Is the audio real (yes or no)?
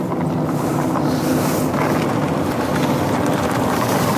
yes